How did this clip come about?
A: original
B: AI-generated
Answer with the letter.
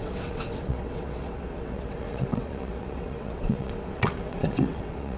B